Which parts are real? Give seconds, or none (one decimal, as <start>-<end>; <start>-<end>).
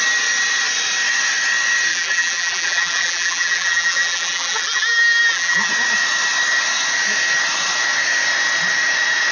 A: 0.0-1.9; 5.7-9.3